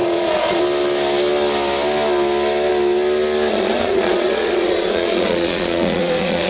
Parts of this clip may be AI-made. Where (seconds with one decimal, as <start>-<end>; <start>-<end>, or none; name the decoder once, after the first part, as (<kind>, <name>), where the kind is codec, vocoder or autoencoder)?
0.0-0.6 (vocoder, Vocos); 3.5-6.5